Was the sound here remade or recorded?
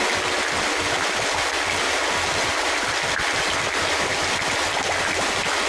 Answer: recorded